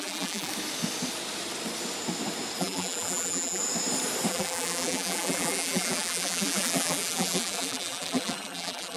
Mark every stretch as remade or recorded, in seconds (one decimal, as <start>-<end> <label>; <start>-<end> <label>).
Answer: 0.0-0.5 remade; 0.5-2.6 recorded; 2.6-3.6 remade; 3.6-4.3 recorded; 4.3-9.0 remade